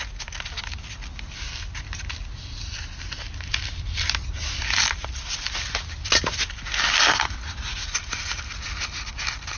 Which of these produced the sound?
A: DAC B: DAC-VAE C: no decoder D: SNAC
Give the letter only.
C